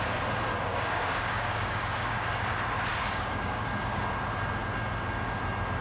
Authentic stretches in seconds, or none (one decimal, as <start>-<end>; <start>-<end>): 0.0-0.7; 2.5-2.9; 3.6-5.8